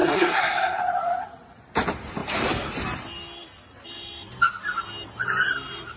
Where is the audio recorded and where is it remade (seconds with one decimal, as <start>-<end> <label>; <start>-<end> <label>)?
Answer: 0.0-0.8 remade; 0.8-6.0 recorded